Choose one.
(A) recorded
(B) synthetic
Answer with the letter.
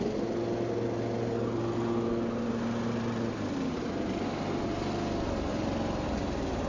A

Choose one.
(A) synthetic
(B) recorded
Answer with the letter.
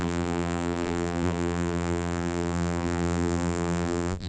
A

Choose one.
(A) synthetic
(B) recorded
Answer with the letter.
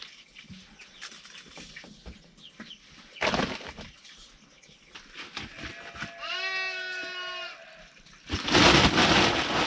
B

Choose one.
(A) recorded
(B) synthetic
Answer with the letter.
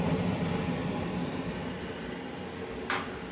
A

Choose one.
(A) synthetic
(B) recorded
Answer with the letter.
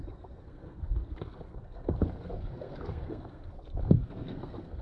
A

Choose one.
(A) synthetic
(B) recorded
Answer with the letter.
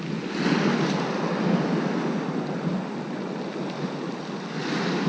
B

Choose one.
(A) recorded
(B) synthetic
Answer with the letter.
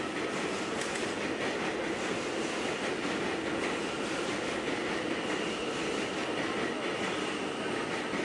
A